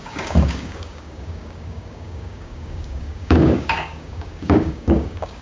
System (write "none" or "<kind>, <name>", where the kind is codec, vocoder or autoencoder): codec, DAC